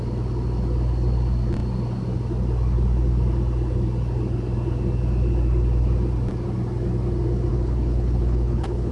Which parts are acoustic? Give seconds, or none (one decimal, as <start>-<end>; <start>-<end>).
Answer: 0.0-7.5